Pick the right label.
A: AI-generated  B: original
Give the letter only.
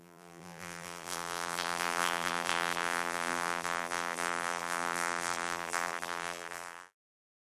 A